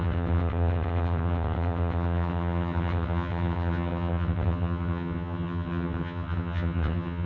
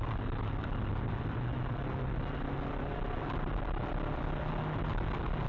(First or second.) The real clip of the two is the second